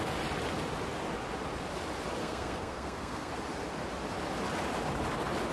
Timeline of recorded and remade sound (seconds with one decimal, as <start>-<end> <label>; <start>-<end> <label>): 0.0-2.2 recorded; 2.2-3.3 remade; 3.3-5.5 recorded